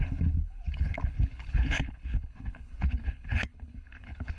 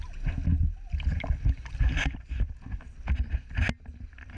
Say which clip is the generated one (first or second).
first